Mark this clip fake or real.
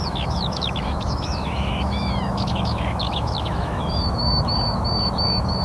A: fake